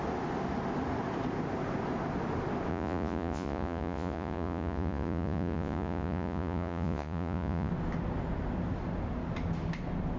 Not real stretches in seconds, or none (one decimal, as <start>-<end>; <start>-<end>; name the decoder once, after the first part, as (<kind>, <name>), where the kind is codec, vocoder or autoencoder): 2.7-7.7 (vocoder, Vocos)

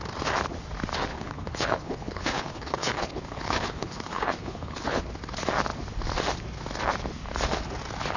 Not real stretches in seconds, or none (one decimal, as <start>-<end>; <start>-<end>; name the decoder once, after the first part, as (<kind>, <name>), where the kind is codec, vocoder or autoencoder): 1.1-5.0 (codec, HILCodec)

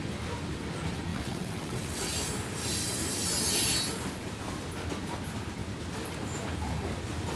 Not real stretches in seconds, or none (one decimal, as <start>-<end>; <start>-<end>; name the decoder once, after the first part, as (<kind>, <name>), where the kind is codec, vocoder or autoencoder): 1.1-2.1 (vocoder, WaveNeXt)

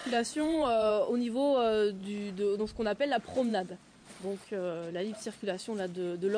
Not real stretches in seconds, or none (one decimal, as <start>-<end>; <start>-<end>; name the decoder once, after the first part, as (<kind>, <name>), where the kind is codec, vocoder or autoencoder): 0.0-0.9 (vocoder, Vocos); 3.5-5.6

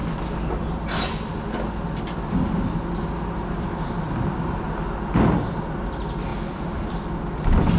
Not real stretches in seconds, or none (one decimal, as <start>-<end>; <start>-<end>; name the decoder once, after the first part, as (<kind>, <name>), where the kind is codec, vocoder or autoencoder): none

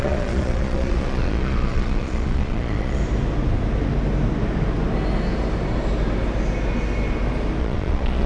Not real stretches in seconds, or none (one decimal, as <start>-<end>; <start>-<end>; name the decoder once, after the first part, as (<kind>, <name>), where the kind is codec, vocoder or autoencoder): 0.0-3.0 (vocoder, Vocos); 7.6-8.3

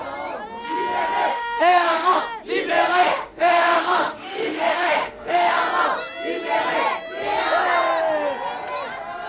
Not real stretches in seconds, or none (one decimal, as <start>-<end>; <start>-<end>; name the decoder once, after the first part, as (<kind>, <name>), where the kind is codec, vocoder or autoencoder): 1.3-2.2 (autoencoder, DAC-VAE); 2.9-5.6

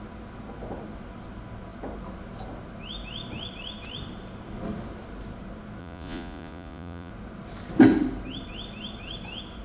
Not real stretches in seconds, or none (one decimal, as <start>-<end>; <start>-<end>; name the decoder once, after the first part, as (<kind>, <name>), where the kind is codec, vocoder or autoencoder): 5.8-7.1 (vocoder, Vocos)